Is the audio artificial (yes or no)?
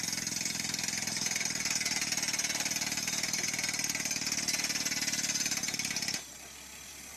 no